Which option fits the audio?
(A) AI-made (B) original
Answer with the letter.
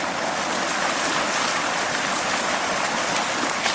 B